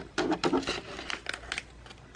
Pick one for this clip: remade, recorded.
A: recorded